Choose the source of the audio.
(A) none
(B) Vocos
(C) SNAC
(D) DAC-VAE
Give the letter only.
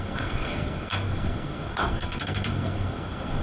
C